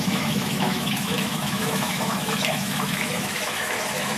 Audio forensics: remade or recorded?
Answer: remade